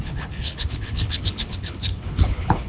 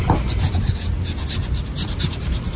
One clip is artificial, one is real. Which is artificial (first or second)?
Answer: first